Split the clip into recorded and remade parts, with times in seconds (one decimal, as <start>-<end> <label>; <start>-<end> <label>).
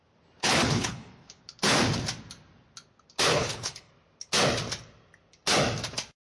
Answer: 0.0-0.4 recorded; 0.4-1.4 remade; 1.4-3.3 recorded; 3.3-3.9 remade; 3.9-6.3 recorded